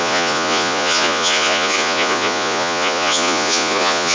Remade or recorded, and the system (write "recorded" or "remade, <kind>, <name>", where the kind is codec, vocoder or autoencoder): remade, vocoder, Vocos